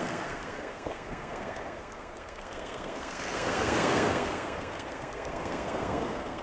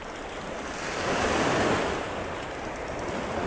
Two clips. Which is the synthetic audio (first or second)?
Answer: first